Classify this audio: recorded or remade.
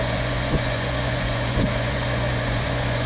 remade